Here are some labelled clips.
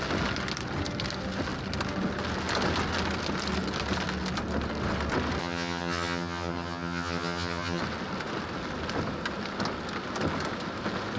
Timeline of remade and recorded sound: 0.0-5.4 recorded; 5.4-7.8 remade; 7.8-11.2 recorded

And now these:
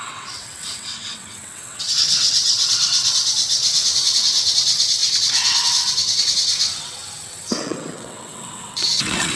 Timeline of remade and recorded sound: 0.0-9.4 remade

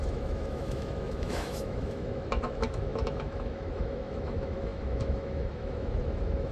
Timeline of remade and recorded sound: 0.0-6.5 remade

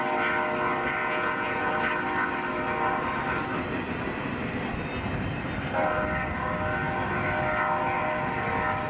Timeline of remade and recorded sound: 0.0-1.0 recorded; 1.0-1.7 remade; 1.7-8.9 recorded